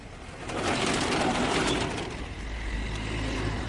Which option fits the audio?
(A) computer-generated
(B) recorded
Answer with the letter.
B